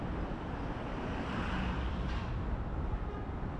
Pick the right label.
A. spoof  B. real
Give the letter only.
B